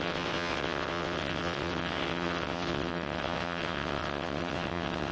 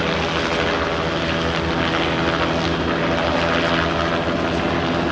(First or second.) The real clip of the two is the second